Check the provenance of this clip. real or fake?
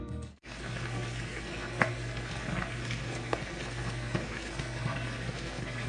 fake